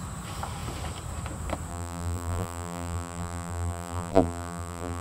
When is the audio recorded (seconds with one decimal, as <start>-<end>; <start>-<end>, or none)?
0.0-1.7